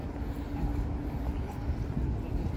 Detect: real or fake real